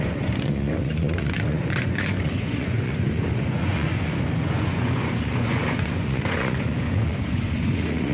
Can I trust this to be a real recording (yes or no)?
no